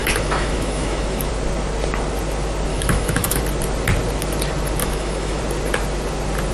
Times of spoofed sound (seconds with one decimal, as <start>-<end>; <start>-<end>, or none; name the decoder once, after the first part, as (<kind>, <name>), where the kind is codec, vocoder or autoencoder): 0.0-1.3 (autoencoder, DAC-VAE); 2.7-3.4; 4.8-5.4